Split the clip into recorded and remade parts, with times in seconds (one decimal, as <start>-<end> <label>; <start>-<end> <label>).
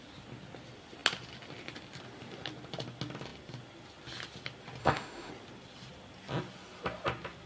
0.0-4.8 recorded; 4.8-5.3 remade; 5.3-7.5 recorded